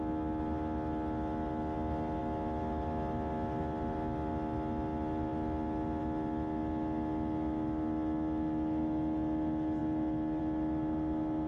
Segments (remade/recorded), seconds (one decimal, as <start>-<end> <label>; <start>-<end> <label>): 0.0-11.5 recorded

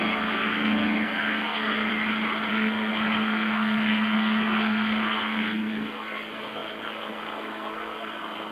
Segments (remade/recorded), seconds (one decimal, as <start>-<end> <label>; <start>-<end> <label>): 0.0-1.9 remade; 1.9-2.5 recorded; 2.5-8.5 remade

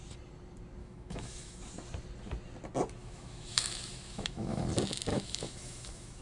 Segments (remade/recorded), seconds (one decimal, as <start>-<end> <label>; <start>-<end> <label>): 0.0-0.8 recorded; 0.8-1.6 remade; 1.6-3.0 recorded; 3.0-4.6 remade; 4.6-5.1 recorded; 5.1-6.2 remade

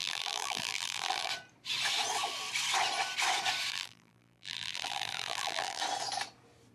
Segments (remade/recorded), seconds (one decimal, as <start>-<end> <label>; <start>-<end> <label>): 0.0-1.3 remade; 1.3-3.7 recorded; 3.7-5.8 remade; 5.8-6.7 recorded

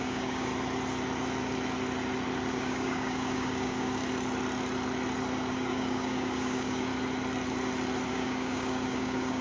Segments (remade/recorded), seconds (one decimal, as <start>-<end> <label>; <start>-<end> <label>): 0.0-0.5 remade; 0.5-2.5 recorded; 2.5-4.0 remade; 4.0-5.5 recorded; 5.5-6.9 remade; 6.9-8.1 recorded; 8.1-9.4 remade

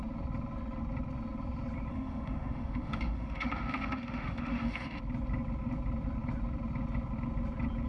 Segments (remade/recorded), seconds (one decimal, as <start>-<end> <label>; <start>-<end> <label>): 0.0-1.9 recorded; 1.9-5.0 remade; 5.0-7.9 recorded

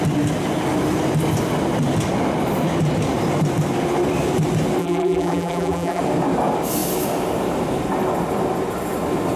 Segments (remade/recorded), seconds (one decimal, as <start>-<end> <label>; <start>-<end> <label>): 0.0-4.8 recorded; 4.8-6.0 remade; 6.0-9.4 recorded

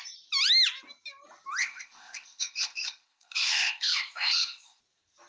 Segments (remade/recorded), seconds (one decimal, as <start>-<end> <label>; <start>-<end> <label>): 0.0-1.6 recorded; 1.6-4.8 remade; 4.8-5.3 recorded